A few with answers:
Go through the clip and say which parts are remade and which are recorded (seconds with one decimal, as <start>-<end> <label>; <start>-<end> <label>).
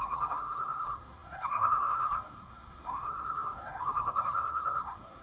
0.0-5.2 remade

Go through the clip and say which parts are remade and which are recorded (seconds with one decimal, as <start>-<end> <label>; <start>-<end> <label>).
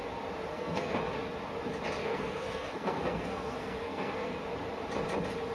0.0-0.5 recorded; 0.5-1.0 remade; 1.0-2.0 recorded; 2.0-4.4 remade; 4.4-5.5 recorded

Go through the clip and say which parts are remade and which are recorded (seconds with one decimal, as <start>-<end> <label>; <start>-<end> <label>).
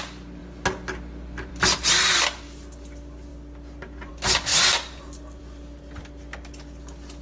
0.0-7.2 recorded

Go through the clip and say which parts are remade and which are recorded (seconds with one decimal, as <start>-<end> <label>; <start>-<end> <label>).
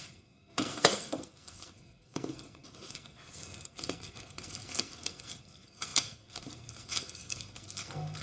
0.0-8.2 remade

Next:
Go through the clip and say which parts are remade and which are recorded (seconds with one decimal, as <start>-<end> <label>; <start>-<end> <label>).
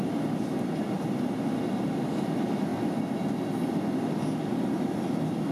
0.0-5.5 recorded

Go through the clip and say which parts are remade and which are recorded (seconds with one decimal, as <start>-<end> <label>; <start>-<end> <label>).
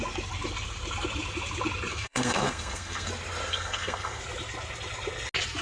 0.0-1.9 recorded; 1.9-3.1 remade; 3.1-3.5 recorded; 3.5-4.2 remade; 4.2-5.6 recorded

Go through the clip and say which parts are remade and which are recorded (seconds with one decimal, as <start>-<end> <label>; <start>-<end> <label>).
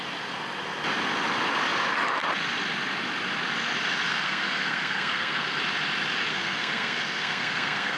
0.0-4.1 recorded; 4.1-5.6 remade; 5.6-6.3 recorded; 6.3-8.0 remade